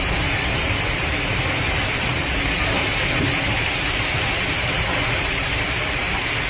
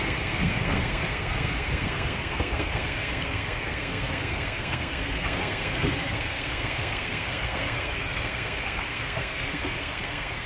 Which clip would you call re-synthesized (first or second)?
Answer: second